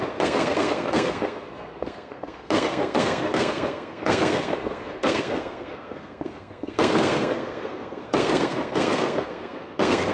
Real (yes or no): no